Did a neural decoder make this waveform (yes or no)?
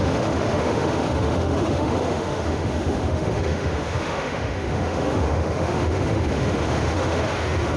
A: yes